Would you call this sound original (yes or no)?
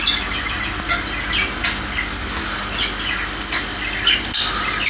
yes